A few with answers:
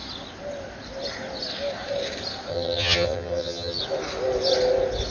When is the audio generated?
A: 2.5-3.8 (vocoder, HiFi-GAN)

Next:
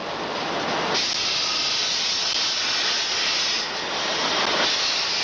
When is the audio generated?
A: none

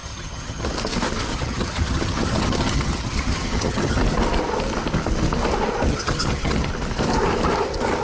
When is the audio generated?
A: 0.0-0.7 (vocoder, HiFi-GAN); 1.3-4.0; 5.9-6.7

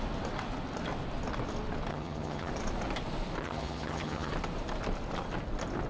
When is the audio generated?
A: 1.9-2.5 (vocoder, HiFi-GAN); 3.4-4.3